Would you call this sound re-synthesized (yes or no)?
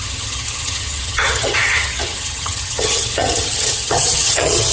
yes